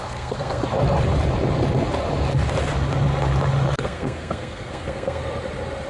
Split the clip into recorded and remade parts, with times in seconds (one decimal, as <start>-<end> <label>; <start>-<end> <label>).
0.0-0.6 remade; 0.6-3.7 recorded; 3.7-5.2 remade; 5.2-5.9 recorded